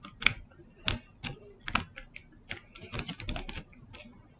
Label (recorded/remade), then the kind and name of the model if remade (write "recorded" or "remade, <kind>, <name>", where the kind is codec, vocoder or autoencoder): recorded